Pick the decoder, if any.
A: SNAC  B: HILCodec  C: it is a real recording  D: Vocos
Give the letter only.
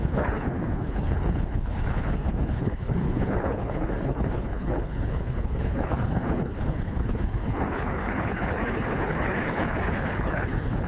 B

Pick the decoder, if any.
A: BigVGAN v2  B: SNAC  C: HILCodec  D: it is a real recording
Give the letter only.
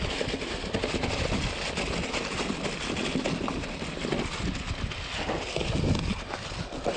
D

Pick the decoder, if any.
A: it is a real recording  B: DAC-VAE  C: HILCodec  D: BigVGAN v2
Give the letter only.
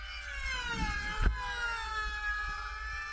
A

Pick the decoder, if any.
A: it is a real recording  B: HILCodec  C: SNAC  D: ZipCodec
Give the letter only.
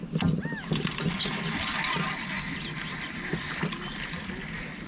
A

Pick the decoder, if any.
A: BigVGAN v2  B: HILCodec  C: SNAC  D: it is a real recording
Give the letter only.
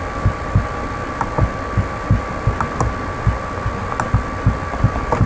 D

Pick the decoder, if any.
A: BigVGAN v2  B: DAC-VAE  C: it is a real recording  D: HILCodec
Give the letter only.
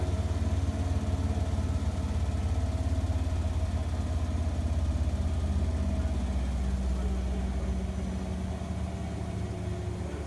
C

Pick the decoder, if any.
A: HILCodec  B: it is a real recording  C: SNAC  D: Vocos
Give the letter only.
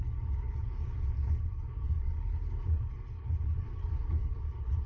A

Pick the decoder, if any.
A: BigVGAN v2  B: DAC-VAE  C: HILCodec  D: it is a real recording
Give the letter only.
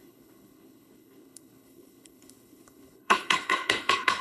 C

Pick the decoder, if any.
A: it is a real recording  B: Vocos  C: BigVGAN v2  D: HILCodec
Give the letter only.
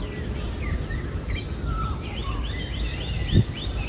A